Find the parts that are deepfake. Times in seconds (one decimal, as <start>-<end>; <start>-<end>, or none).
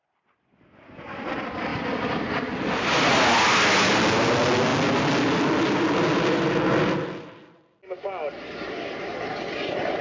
1.7-2.8